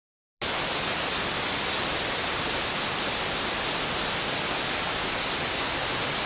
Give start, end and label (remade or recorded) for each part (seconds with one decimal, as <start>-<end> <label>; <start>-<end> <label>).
0.0-6.3 recorded